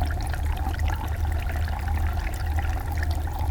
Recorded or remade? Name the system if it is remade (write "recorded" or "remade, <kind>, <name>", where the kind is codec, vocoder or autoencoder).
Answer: recorded